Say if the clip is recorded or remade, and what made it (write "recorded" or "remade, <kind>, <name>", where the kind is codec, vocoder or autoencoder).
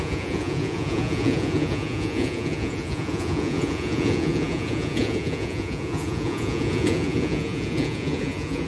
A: remade, vocoder, Vocos